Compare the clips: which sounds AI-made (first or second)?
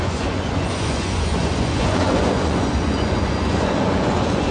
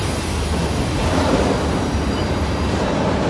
first